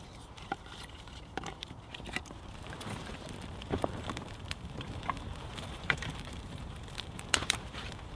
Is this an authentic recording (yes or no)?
no